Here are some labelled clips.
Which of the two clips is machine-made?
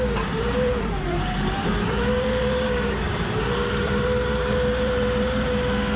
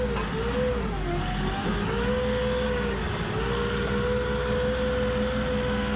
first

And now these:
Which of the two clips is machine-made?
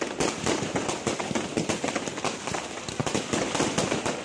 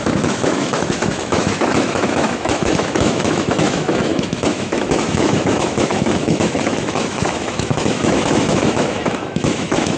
second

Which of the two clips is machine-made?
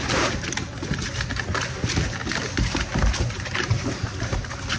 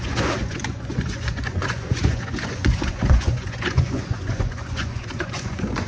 second